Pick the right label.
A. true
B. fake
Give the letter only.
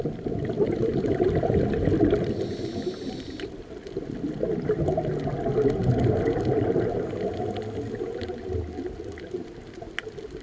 A